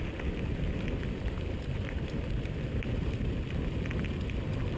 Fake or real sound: real